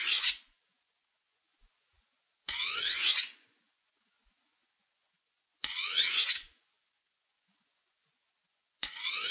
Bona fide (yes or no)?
no